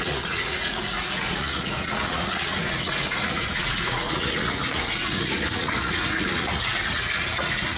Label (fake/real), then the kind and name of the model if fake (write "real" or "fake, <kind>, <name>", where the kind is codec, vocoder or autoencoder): fake, vocoder, Vocos